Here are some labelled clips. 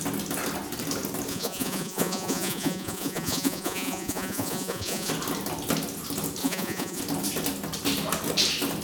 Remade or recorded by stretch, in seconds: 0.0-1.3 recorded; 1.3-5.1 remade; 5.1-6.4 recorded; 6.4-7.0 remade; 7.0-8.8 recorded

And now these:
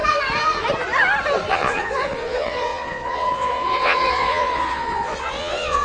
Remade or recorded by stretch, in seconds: 0.0-1.5 recorded; 1.5-5.8 remade

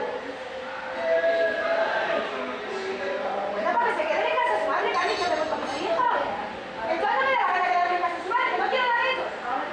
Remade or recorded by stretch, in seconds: 0.0-4.3 remade; 4.3-6.9 recorded; 6.9-9.7 remade

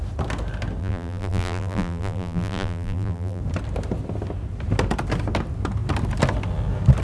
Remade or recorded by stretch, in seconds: 0.0-0.8 recorded; 0.8-3.4 remade; 3.4-7.0 recorded